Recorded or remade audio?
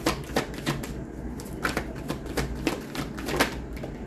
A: recorded